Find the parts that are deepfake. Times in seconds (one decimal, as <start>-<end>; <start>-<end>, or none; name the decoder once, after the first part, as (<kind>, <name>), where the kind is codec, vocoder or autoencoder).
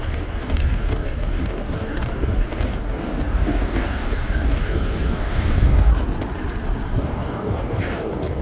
0.0-5.9 (codec, DAC); 6.9-8.4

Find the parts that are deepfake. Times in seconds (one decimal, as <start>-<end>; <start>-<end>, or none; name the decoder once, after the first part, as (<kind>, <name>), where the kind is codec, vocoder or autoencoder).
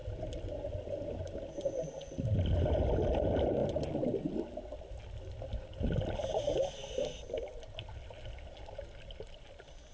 none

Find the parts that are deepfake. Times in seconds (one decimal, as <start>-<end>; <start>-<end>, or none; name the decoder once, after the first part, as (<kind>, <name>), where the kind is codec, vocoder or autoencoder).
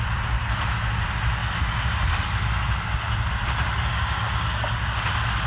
3.9-4.8 (codec, DAC)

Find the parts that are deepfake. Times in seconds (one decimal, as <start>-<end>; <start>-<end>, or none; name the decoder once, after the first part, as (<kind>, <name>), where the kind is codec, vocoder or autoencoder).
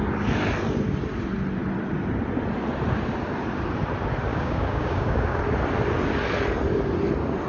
4.3-5.4 (codec, DAC)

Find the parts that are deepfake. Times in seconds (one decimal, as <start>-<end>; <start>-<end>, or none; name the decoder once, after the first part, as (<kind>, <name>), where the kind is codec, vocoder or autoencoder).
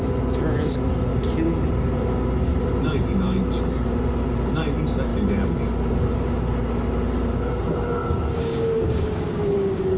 8.0-10.0 (codec, DAC)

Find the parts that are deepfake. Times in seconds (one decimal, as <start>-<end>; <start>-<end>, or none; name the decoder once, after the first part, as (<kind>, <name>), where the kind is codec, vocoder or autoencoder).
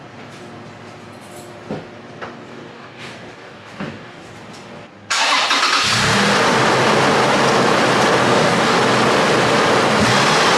2.5-4.3 (codec, DAC); 8.2-8.8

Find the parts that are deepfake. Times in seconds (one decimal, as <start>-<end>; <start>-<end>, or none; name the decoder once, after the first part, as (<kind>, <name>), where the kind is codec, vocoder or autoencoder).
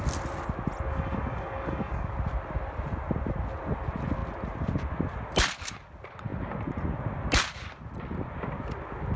0.9-2.1 (codec, DAC)